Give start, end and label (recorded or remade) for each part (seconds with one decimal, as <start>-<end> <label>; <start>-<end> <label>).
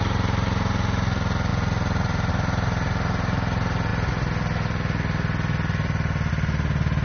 0.0-7.0 recorded